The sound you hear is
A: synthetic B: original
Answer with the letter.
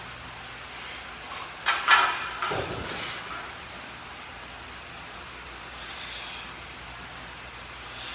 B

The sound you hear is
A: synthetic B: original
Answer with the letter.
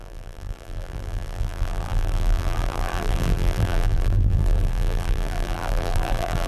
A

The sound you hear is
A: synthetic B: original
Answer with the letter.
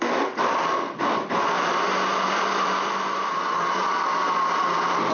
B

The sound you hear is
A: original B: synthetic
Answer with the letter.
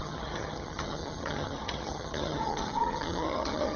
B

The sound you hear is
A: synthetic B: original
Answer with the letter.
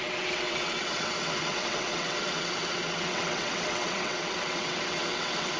A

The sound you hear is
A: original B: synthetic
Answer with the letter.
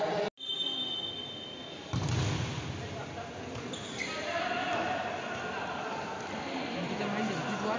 A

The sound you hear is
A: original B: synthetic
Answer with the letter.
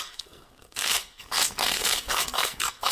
B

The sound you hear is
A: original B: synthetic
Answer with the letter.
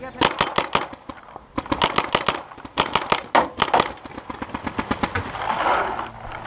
A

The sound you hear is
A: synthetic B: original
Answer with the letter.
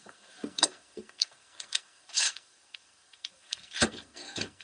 A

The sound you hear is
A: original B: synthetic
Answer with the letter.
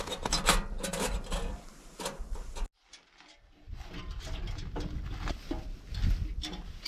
A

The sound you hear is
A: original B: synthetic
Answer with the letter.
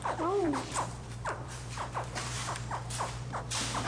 B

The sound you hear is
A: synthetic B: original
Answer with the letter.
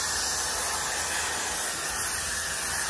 B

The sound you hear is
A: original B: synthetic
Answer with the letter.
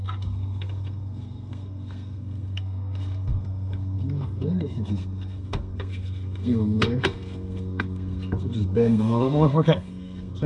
B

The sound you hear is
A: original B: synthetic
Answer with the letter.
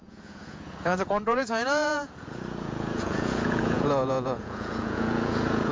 B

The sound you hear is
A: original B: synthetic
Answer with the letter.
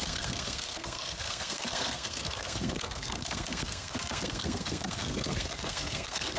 B